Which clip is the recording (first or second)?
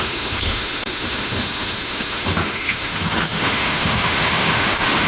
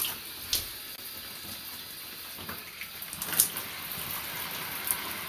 second